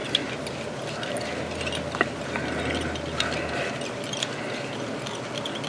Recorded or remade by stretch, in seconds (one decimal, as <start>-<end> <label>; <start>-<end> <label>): 0.0-5.7 recorded